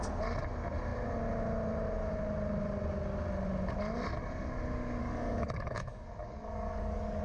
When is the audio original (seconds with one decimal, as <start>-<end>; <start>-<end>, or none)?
0.0-5.0